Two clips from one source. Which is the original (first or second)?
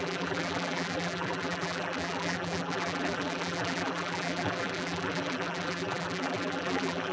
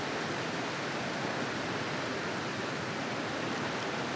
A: second